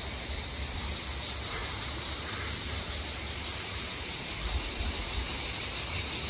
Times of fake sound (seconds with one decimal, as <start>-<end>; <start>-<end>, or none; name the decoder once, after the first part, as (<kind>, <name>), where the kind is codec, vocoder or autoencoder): none

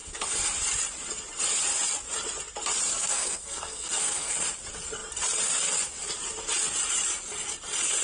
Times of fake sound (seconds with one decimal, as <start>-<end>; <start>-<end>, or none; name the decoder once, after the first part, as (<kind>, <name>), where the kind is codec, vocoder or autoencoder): 2.9-4.4 (codec, SNAC)